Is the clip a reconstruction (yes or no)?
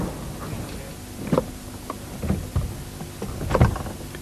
no